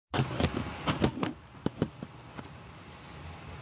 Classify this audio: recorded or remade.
recorded